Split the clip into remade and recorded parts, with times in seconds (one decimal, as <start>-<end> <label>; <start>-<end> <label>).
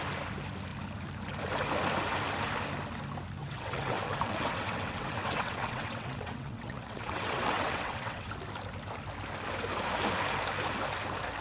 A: 0.0-3.4 recorded; 3.4-8.3 remade; 8.3-11.4 recorded